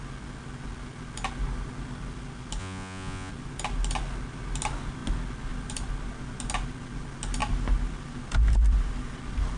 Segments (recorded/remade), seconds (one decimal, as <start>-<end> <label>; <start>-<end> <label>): 0.0-2.6 recorded; 2.6-3.3 remade; 3.3-9.6 recorded